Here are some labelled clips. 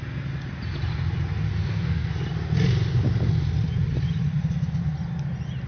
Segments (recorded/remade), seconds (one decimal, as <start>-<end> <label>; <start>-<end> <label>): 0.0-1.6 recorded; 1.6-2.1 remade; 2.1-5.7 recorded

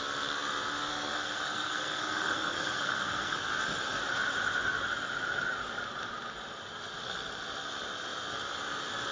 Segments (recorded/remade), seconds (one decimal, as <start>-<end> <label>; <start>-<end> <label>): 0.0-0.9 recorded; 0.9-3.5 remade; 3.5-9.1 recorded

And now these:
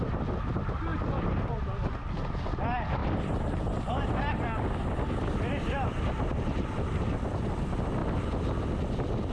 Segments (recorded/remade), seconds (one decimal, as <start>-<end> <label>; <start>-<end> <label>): 0.0-9.3 recorded